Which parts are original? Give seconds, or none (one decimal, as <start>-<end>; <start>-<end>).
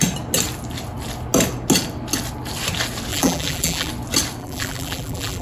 0.0-3.1; 3.9-4.4